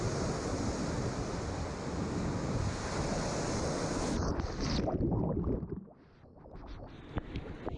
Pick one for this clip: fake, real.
real